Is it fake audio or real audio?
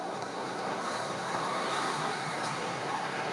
fake